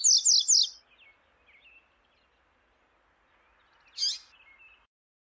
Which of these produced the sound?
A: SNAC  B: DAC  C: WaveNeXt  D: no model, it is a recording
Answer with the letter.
D